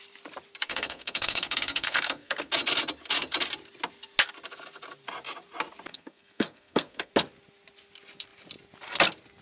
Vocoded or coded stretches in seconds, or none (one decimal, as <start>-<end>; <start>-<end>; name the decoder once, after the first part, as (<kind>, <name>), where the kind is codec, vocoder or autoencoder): 0.6-2.5 (codec, SNAC); 5.9-7.1